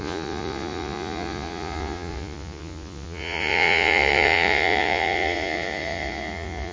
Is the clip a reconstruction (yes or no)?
yes